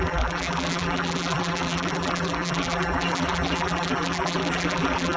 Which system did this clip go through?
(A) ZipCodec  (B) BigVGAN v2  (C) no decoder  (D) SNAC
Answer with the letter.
B